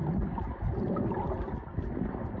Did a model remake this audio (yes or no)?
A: no